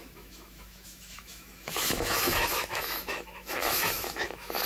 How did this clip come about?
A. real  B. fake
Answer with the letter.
B